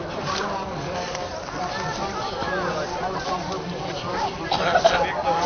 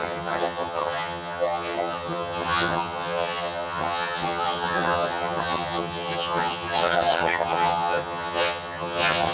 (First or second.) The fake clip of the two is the second